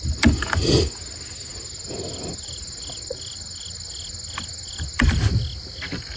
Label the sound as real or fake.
real